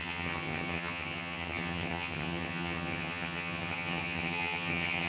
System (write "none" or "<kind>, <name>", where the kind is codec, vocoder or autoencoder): vocoder, HiFi-GAN